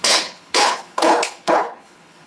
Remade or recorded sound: remade